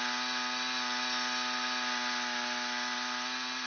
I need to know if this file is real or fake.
real